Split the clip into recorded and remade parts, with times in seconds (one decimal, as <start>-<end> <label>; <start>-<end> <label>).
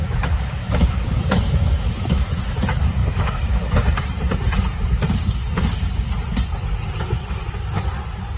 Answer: 0.0-2.4 remade; 2.4-3.0 recorded; 3.0-3.7 remade; 3.7-8.4 recorded